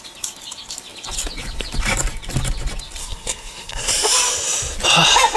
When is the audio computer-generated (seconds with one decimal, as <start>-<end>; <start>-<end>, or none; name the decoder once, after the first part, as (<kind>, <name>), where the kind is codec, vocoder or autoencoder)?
3.0-3.9 (codec, SNAC)